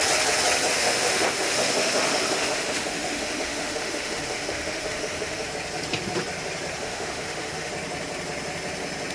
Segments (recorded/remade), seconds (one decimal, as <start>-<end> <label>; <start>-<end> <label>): 0.0-0.7 recorded; 0.7-5.5 remade; 5.5-6.8 recorded; 6.8-7.7 remade; 7.7-9.1 recorded